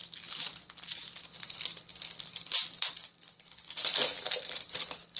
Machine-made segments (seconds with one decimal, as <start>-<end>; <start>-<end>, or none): none